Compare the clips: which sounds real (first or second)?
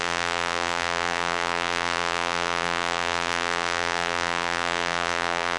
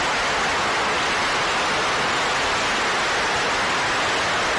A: second